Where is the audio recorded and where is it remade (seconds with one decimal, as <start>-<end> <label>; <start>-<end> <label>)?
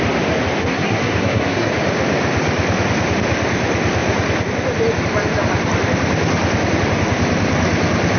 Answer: 0.0-0.6 recorded; 0.6-1.7 remade; 1.7-8.2 recorded